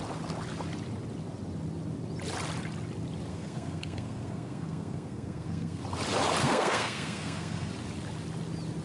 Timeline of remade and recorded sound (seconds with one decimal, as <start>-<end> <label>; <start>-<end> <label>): 0.0-3.3 recorded; 3.3-5.8 remade; 5.8-6.4 recorded; 6.4-7.7 remade; 7.7-8.8 recorded